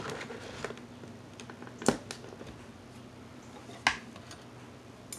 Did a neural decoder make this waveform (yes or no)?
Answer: no